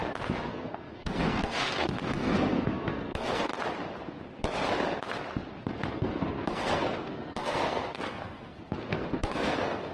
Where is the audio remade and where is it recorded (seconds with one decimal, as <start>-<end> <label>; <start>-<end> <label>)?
0.0-0.5 recorded; 0.5-3.5 remade; 3.5-5.7 recorded; 5.7-9.9 remade